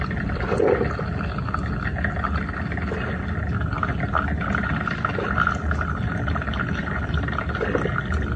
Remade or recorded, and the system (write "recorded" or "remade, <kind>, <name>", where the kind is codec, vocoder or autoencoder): recorded